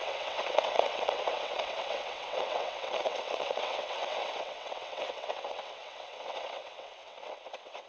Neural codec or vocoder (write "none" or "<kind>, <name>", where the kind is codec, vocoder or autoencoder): vocoder, WaveNeXt